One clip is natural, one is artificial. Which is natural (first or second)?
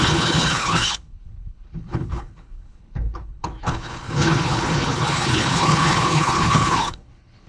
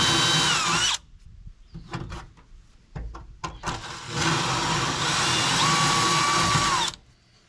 second